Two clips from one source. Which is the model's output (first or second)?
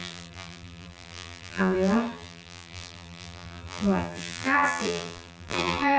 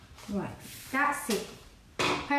first